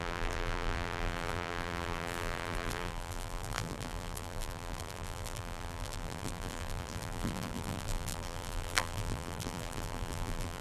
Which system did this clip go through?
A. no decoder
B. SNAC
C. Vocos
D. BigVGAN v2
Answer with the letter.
D